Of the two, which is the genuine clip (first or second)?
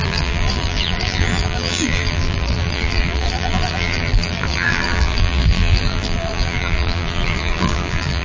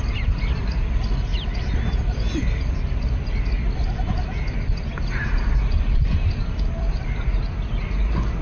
second